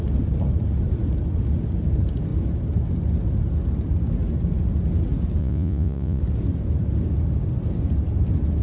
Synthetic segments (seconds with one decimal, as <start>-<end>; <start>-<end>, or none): 5.4-6.2